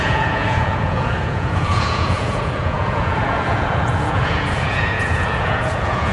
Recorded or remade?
remade